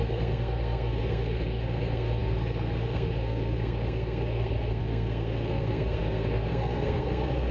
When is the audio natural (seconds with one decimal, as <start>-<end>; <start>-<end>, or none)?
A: none